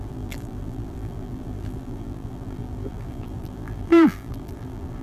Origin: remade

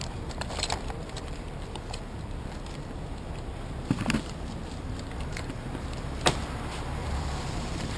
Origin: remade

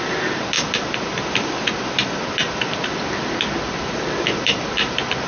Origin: remade